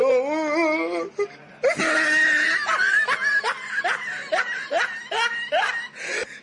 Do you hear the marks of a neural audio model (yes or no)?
no